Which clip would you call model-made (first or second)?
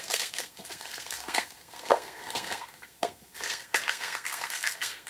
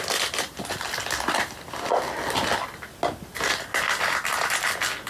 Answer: first